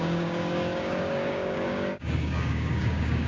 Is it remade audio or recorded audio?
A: remade